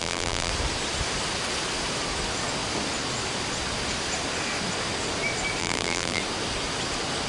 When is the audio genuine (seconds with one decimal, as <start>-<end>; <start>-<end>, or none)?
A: 0.5-5.6; 6.2-7.3